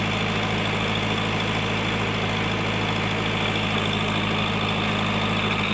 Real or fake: real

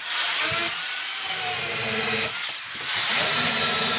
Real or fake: fake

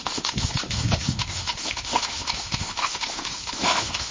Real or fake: fake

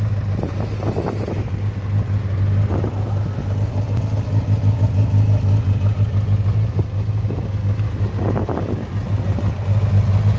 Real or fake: real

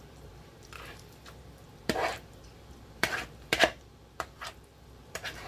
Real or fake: fake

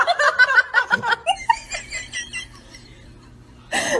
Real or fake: real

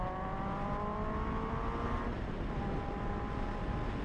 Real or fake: real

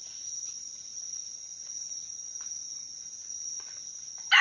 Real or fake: real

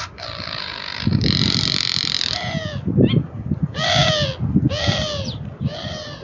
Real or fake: real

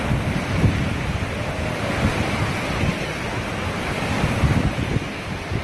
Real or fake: real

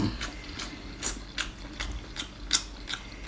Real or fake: real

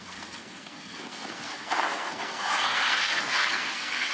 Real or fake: fake